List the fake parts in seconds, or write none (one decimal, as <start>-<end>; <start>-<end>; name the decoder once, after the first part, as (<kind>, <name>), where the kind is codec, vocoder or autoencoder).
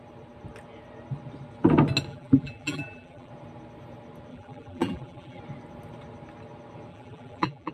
2.1-3.3 (vocoder, BigVGAN v2); 4.3-5.4; 6.9-7.7